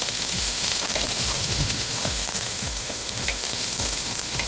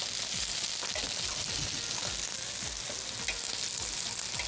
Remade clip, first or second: first